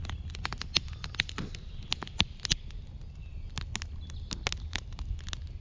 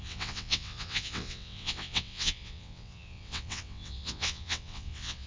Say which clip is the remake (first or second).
second